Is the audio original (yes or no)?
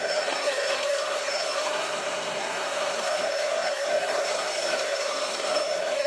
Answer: no